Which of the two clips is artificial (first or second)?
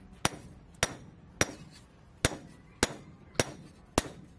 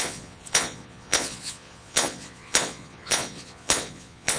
second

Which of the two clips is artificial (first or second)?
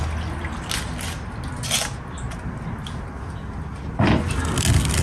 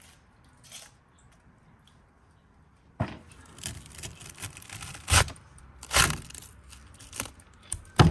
second